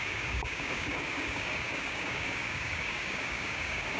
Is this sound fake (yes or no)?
yes